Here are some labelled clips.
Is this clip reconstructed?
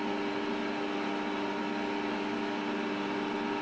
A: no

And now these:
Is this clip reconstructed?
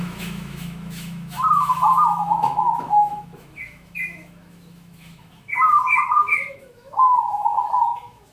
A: yes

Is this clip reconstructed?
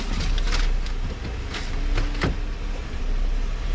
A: no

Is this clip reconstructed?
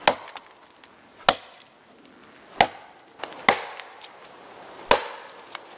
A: no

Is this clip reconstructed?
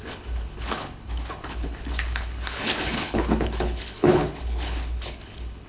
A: yes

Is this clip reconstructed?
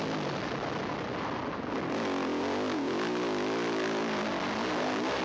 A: no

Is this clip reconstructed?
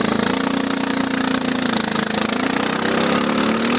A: no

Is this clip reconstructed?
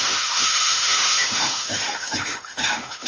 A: yes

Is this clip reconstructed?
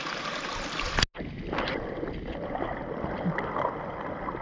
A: no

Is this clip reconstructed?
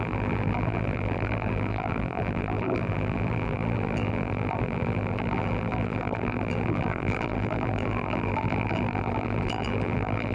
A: yes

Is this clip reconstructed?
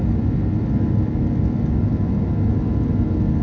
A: no